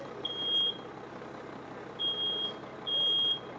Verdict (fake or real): real